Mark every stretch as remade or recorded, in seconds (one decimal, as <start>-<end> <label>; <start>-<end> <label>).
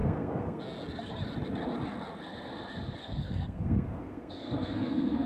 0.0-0.6 remade; 0.6-3.0 recorded; 3.0-5.3 remade